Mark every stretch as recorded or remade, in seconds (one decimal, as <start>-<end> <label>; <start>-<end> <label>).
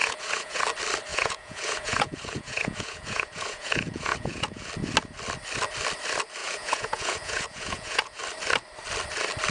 0.0-0.6 remade; 0.6-1.1 recorded; 1.1-4.7 remade; 4.7-6.4 recorded; 6.4-8.2 remade; 8.2-9.5 recorded